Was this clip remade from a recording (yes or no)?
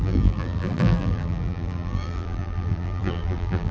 yes